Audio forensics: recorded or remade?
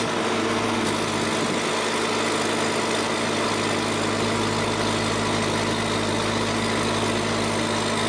recorded